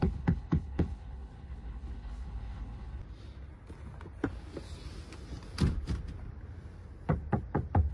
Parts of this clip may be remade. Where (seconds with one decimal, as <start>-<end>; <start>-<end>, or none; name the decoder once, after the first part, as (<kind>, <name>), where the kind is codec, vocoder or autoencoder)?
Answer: 0.0-3.0 (codec, HILCodec)